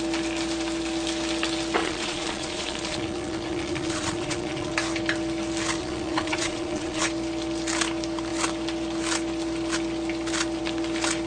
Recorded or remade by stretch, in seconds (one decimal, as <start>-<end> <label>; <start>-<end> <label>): 0.0-1.8 recorded; 1.8-4.7 remade; 4.7-5.8 recorded; 5.8-7.0 remade; 7.0-11.3 recorded